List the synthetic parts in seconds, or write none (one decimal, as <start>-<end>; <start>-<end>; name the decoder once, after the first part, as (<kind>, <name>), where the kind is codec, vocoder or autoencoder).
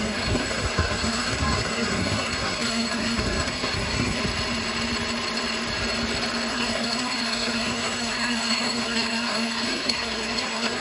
0.0-4.2 (codec, SNAC); 6.5-10.8